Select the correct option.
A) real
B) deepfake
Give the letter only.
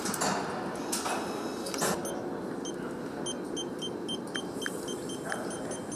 A